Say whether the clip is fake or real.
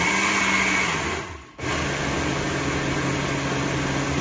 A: real